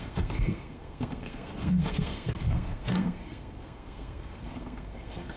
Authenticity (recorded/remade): remade